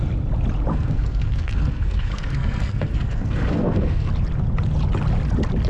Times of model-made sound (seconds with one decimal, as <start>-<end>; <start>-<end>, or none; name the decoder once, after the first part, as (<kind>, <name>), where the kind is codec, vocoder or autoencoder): 0.7-4.1 (codec, SNAC)